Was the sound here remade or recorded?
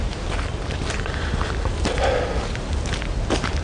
recorded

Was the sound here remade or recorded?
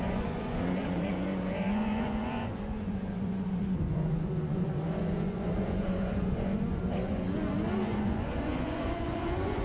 remade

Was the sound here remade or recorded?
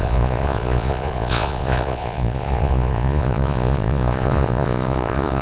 remade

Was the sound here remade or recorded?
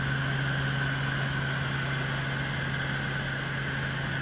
recorded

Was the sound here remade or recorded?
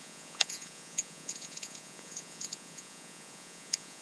remade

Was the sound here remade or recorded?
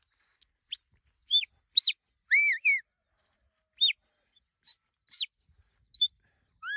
recorded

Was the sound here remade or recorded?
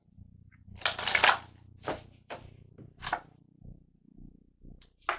recorded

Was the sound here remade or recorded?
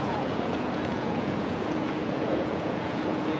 remade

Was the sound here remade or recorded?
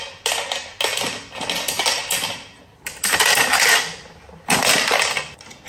recorded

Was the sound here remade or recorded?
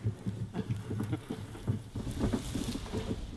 recorded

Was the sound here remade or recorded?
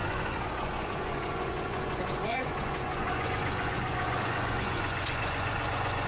remade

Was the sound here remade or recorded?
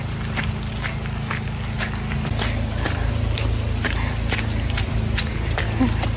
recorded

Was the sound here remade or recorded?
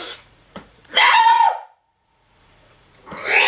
remade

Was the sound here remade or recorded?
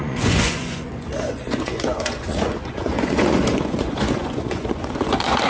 remade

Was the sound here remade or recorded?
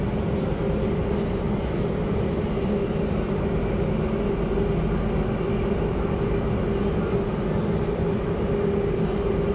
recorded